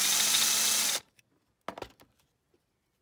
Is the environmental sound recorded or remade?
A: recorded